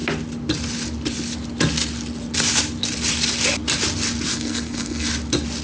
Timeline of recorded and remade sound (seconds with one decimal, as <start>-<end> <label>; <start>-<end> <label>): 0.0-4.3 recorded; 4.3-5.1 remade; 5.1-5.6 recorded